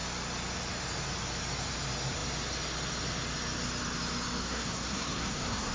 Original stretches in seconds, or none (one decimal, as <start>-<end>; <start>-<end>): 0.0-4.4